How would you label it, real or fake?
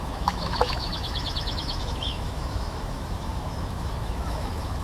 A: fake